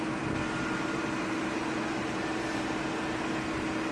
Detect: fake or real real